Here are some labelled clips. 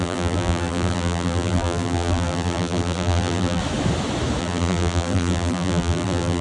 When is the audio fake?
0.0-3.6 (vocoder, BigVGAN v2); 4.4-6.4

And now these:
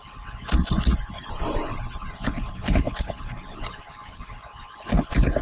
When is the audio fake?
none

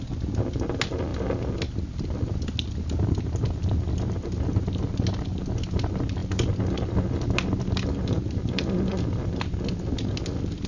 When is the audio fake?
none

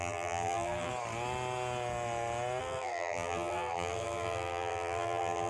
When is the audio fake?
0.0-0.9 (vocoder, BigVGAN v2); 2.6-5.5